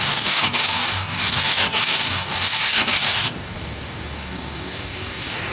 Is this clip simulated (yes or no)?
yes